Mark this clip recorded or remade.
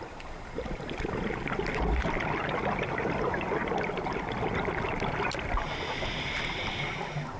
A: recorded